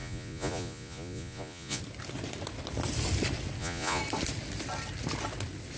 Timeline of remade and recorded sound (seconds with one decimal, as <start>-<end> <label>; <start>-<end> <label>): 0.0-1.8 remade; 1.8-3.6 recorded; 3.6-4.0 remade; 4.0-5.8 recorded